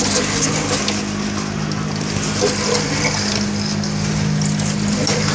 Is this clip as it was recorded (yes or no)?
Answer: yes